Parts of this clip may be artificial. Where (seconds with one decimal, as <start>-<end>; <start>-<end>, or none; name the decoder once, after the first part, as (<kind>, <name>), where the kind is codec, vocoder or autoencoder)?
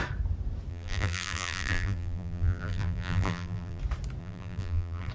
0.7-3.8 (vocoder, BigVGAN v2); 4.2-5.1